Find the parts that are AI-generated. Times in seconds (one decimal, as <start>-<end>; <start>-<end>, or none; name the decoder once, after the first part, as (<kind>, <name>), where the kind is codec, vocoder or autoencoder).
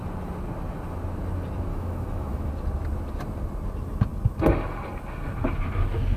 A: 1.7-2.5 (autoencoder, DAC-VAE)